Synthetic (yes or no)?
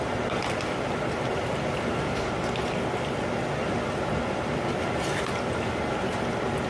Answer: no